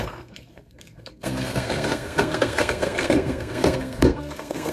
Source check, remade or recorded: remade